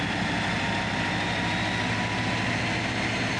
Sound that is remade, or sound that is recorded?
recorded